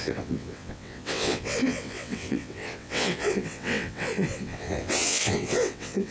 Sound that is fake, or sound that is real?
fake